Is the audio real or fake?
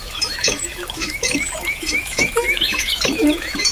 fake